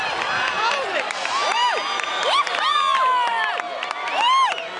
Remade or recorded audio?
recorded